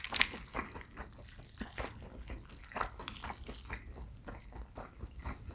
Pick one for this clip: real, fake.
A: real